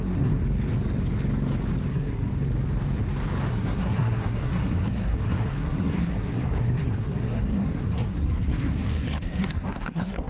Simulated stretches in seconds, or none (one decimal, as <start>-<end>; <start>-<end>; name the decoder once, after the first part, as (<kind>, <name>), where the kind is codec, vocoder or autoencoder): 0.0-0.4 (codec, SNAC); 1.9-2.3; 3.5-10.3